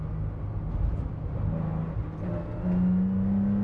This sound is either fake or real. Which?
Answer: real